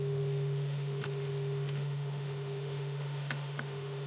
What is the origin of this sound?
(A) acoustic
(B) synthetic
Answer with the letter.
B